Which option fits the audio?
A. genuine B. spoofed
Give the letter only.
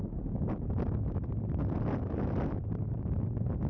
A